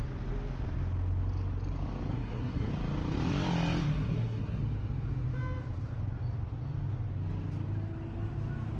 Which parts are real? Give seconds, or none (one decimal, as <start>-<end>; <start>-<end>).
0.0-2.1; 2.7-3.9; 4.6-8.8